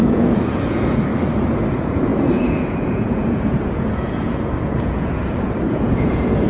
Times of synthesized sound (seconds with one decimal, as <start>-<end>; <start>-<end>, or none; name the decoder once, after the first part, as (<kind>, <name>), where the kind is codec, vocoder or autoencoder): 0.0-1.1 (vocoder, Vocos); 1.7-6.5